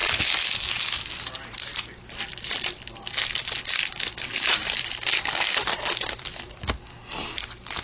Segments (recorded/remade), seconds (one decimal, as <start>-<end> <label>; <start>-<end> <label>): 0.0-2.3 recorded; 2.3-6.9 remade; 6.9-7.8 recorded